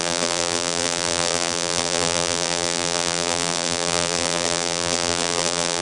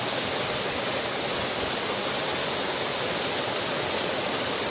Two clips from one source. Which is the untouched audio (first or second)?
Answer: second